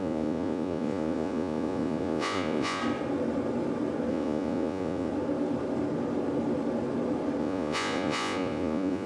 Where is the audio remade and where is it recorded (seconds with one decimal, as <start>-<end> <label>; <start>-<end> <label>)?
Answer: 0.0-2.8 remade; 2.8-4.1 recorded; 4.1-5.1 remade; 5.1-7.4 recorded; 7.4-9.1 remade